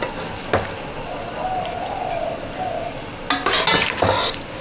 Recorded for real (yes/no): yes